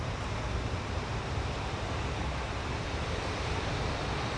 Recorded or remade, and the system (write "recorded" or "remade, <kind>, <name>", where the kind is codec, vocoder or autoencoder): recorded